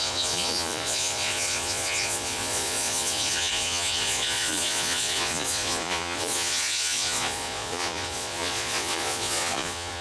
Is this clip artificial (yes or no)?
yes